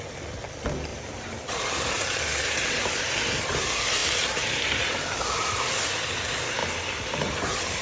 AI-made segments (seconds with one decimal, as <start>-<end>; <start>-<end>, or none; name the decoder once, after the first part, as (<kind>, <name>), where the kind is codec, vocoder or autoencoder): 0.9-3.1 (vocoder, BigVGAN v2); 4.0-5.9; 6.6-7.8